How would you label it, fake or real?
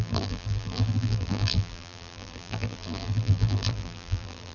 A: fake